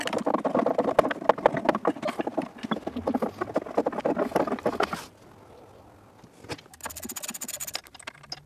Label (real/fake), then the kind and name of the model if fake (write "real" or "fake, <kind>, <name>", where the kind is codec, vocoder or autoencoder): real